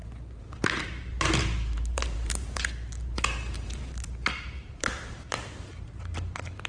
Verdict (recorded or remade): remade